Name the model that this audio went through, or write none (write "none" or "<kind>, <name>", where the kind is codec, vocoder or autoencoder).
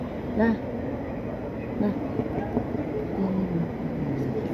none